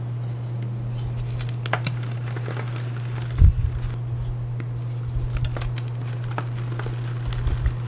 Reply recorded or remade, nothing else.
recorded